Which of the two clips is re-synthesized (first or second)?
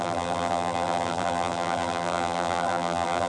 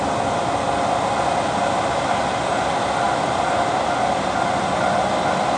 first